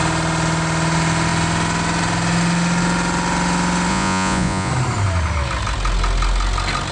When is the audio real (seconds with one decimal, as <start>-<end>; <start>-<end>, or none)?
0.0-3.9; 4.7-6.9